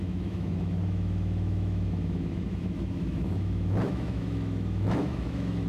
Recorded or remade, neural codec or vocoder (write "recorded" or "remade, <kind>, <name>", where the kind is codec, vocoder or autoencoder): remade, autoencoder, DAC-VAE